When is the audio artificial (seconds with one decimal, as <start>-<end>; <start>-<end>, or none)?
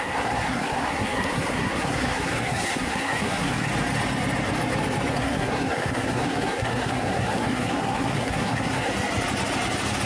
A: 0.0-3.7; 5.1-8.9